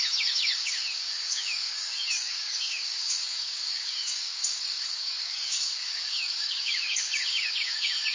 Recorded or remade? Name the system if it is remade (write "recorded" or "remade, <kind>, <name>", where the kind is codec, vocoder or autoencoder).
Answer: remade, codec, DAC